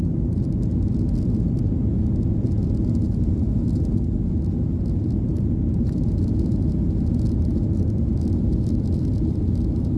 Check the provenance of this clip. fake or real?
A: real